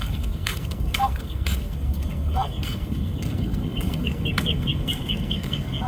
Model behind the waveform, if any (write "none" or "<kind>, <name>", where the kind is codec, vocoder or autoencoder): codec, SNAC